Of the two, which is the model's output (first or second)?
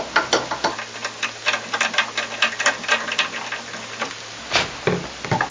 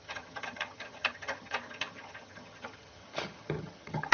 second